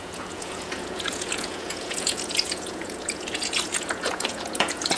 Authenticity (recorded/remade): remade